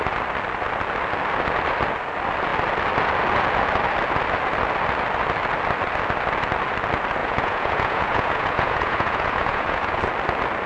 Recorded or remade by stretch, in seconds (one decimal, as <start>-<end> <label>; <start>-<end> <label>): 0.0-7.2 recorded; 7.2-10.0 remade; 10.0-10.7 recorded